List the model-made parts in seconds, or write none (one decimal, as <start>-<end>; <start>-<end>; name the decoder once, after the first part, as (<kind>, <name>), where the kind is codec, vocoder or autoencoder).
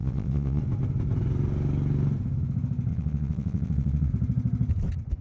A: 0.0-0.6 (vocoder, Vocos); 2.9-4.1